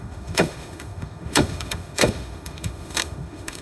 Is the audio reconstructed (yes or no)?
yes